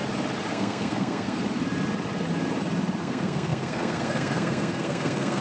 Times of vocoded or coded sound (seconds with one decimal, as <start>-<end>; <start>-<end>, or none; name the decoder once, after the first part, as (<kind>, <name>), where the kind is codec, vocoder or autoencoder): 0.5-1.4 (codec, SNAC); 3.0-5.4